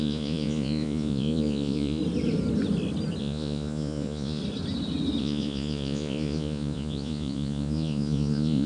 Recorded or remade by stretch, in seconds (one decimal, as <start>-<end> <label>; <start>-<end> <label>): 0.0-2.0 remade; 2.0-3.2 recorded; 3.2-4.4 remade; 4.4-5.2 recorded; 5.2-8.7 remade

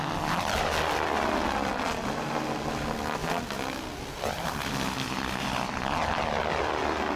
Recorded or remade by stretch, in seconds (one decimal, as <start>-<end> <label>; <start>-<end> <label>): 0.0-7.2 recorded

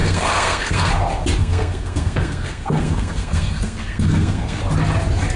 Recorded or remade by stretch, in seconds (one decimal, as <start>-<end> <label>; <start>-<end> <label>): 0.0-0.9 remade; 0.9-1.4 recorded; 1.4-4.6 remade; 4.6-5.4 recorded

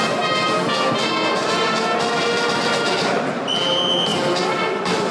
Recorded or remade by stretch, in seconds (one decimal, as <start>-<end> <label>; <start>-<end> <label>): 0.0-5.1 recorded